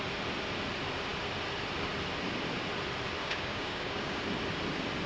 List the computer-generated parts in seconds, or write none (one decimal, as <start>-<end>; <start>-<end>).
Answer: 3.2-4.2

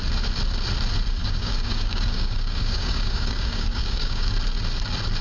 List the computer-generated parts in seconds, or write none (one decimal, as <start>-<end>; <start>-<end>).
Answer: 1.2-4.3